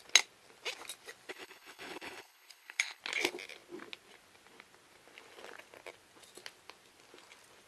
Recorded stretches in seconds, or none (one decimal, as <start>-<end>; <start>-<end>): 0.0-1.3; 3.0-7.7